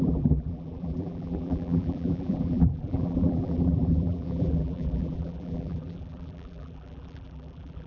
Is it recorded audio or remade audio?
remade